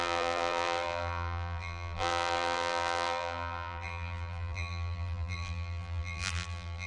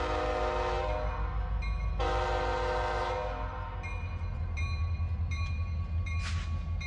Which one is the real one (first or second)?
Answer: second